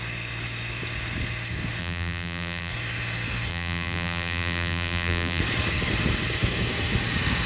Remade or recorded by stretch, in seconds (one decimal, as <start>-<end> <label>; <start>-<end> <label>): 0.0-1.8 recorded; 1.8-2.7 remade; 2.7-3.5 recorded; 3.5-5.4 remade; 5.4-7.5 recorded